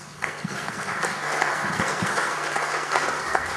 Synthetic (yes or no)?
yes